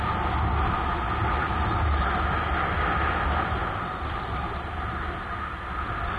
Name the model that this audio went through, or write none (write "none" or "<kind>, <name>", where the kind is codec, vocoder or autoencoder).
none